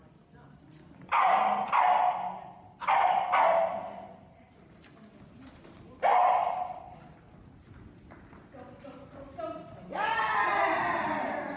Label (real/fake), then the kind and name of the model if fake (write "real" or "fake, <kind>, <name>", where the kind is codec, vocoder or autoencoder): real